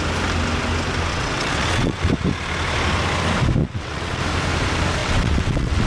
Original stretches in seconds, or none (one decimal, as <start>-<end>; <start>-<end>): 0.0-1.1; 2.1-3.6; 4.2-5.0